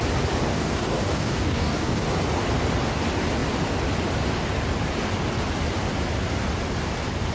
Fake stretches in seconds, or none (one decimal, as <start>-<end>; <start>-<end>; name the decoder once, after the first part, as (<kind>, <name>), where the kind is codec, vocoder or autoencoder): 0.5-2.1 (codec, DAC)